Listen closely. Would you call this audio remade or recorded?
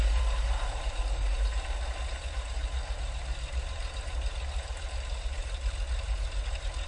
remade